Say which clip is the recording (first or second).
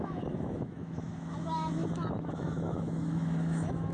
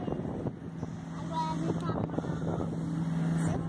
second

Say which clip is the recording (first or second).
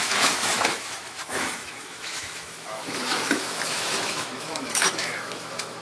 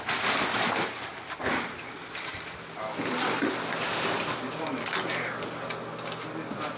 second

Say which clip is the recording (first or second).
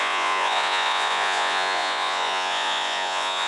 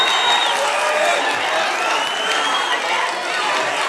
second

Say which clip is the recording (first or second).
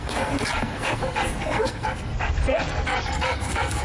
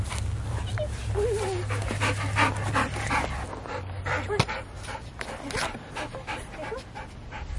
second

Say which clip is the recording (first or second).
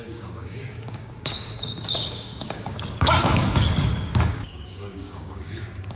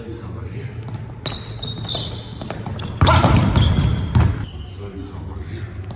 second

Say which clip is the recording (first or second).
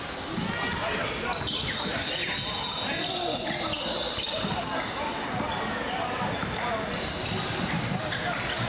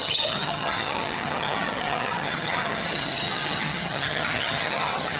first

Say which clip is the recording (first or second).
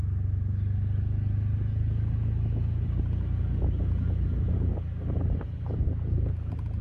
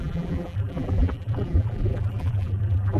first